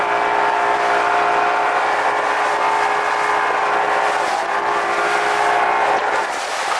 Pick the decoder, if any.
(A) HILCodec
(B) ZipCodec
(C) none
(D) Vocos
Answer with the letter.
C